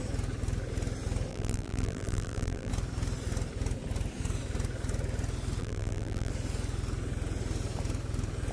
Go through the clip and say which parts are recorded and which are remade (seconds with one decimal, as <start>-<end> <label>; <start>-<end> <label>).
0.0-1.3 recorded; 1.3-2.7 remade; 2.7-5.6 recorded; 5.6-6.3 remade; 6.3-8.5 recorded